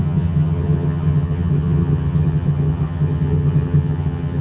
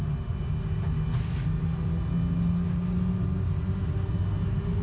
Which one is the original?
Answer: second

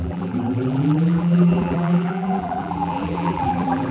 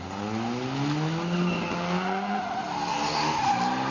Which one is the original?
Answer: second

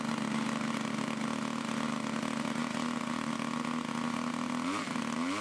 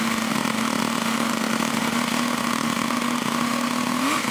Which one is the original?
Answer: first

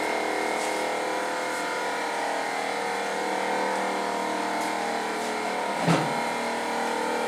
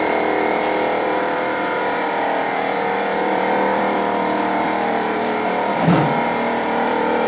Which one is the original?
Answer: first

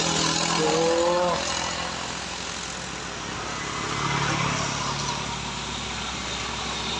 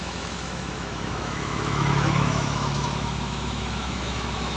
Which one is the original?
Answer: first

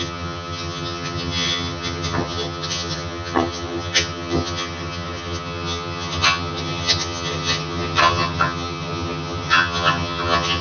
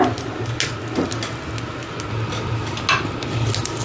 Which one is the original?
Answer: second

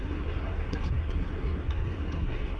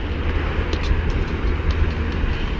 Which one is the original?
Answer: second